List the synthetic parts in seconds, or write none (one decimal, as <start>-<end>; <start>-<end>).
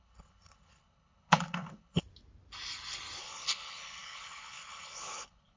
0.0-2.0; 3.2-5.6